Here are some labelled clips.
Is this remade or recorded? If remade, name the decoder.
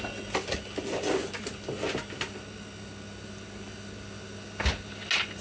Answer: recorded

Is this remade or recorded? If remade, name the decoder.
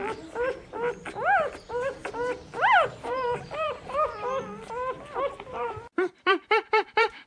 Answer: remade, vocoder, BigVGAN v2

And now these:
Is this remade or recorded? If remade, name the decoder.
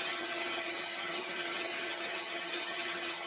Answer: remade, vocoder, HiFi-GAN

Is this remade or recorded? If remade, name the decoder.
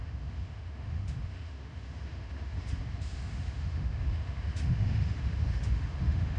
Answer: remade, autoencoder, DAC-VAE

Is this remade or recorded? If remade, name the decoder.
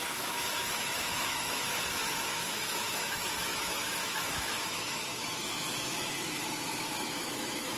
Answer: remade, autoencoder, DAC-VAE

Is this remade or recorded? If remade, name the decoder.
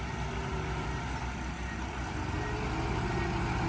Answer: recorded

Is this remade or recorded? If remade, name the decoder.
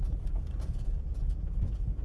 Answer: remade, vocoder, Vocos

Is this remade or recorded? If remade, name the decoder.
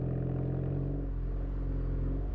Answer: recorded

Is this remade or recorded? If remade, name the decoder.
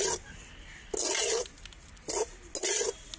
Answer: recorded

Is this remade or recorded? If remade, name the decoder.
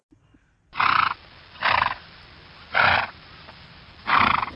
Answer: recorded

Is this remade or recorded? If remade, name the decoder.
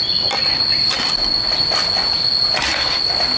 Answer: recorded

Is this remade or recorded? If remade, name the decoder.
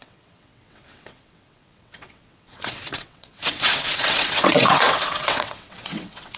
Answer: remade, vocoder, WaveNeXt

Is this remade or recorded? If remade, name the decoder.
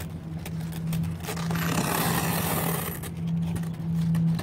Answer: recorded